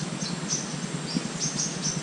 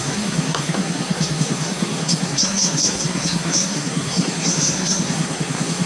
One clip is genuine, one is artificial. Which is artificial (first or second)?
second